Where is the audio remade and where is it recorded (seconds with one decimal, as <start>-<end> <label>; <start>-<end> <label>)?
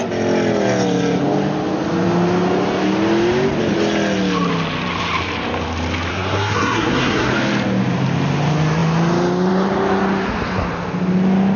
0.0-6.1 recorded; 6.1-7.3 remade; 7.3-11.6 recorded